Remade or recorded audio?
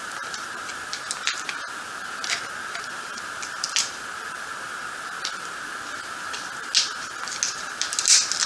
recorded